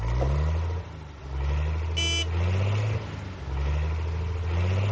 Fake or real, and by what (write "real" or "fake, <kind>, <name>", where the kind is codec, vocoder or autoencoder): real